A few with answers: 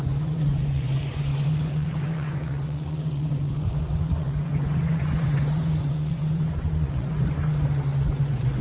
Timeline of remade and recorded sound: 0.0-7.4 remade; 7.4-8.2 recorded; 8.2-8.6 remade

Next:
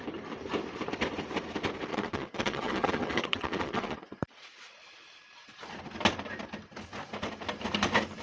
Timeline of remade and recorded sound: 0.0-1.9 recorded; 1.9-4.2 remade; 4.2-8.2 recorded

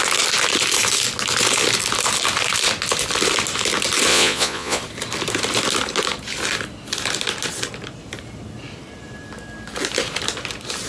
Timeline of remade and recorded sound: 0.0-4.1 recorded; 4.1-4.8 remade; 4.8-10.9 recorded

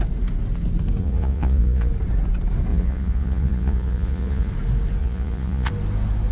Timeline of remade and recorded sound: 0.0-1.0 recorded; 1.0-1.9 remade; 1.9-2.7 recorded; 2.7-4.5 remade; 4.5-5.0 recorded; 5.0-5.7 remade; 5.7-6.3 recorded

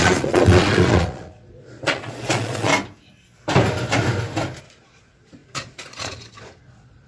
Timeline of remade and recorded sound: 0.0-2.7 remade; 2.7-4.6 recorded; 4.6-7.1 remade

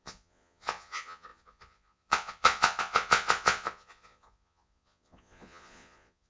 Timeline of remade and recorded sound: 0.0-6.3 remade

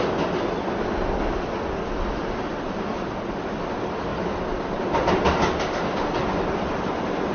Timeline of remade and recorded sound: 0.0-7.3 recorded

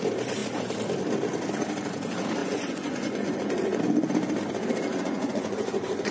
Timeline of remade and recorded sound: 0.0-2.4 recorded; 2.4-3.8 remade; 3.8-4.9 recorded; 4.9-6.1 remade